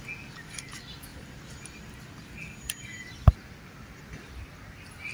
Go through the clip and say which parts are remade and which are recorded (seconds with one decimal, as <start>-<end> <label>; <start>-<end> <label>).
0.0-5.1 recorded